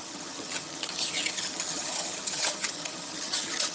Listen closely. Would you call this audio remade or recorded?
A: remade